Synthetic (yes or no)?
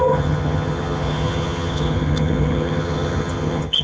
yes